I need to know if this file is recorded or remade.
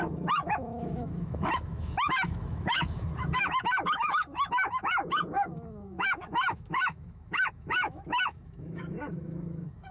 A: remade